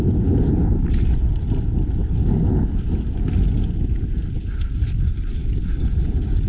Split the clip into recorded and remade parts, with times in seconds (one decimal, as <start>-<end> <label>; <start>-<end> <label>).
0.0-6.5 recorded